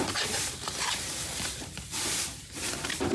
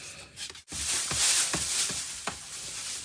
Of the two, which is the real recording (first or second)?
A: second